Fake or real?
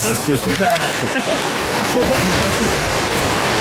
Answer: fake